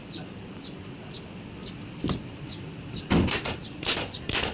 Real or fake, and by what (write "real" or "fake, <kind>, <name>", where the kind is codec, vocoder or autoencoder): real